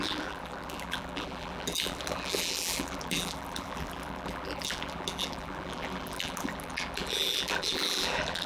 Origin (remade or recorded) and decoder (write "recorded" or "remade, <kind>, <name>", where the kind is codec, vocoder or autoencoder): remade, vocoder, BigVGAN v2